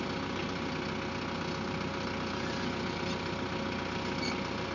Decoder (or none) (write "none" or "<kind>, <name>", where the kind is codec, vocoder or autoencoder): none